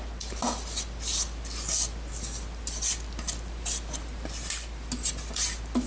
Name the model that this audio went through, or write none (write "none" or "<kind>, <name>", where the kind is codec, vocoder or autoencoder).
none